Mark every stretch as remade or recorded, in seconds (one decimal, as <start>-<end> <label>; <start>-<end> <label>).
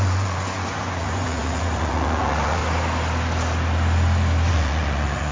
0.0-2.6 remade; 2.6-4.5 recorded; 4.5-5.3 remade